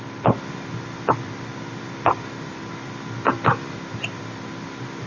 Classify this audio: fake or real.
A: fake